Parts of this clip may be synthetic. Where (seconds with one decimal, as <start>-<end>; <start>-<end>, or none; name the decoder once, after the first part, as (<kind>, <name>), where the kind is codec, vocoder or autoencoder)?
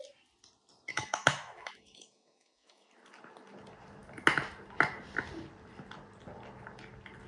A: 0.9-2.9 (autoencoder, DAC-VAE)